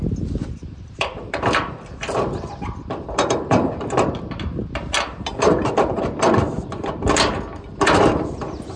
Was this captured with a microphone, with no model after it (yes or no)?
yes